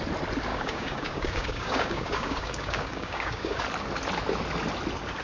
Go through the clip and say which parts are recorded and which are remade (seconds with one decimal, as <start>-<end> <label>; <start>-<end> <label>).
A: 0.0-0.5 recorded; 0.5-3.6 remade; 3.6-5.2 recorded